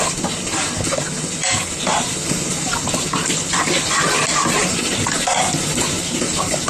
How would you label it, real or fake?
real